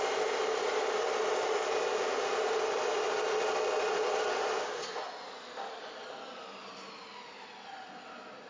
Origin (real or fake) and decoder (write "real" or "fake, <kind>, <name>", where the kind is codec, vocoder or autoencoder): real